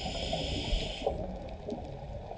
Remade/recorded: recorded